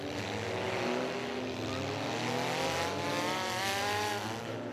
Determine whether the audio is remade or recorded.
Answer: recorded